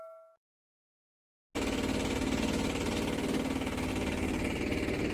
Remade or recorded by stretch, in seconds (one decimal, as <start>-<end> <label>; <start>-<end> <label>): 0.0-5.1 recorded